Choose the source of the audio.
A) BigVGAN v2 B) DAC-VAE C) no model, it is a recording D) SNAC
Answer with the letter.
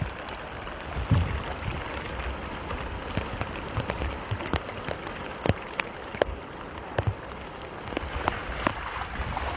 C